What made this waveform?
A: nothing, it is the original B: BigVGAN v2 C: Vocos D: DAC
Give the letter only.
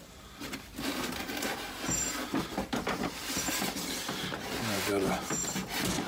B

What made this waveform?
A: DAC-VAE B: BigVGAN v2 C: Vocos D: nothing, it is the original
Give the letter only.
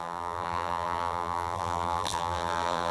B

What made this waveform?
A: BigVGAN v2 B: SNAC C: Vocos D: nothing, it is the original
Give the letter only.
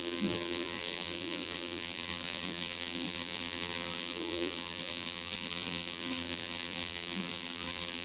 A